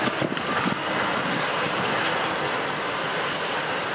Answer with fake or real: real